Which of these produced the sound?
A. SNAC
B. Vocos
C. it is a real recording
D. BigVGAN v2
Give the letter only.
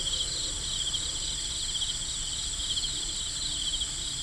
C